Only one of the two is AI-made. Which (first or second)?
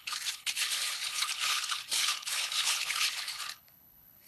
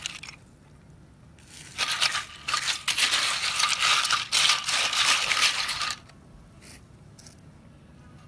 first